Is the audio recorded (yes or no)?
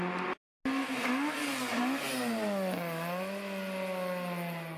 yes